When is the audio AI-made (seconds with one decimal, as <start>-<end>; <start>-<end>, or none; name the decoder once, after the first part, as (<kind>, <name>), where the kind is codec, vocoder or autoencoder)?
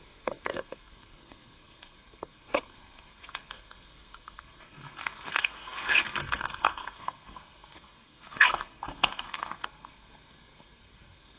0.0-11.4 (codec, SNAC)